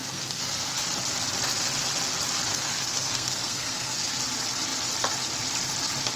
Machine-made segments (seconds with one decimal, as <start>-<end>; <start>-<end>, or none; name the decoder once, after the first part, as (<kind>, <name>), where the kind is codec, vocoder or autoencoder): 0.0-0.7 (codec, SNAC); 2.5-4.2